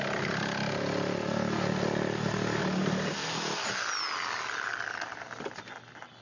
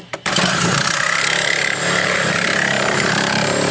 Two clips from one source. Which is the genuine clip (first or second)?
first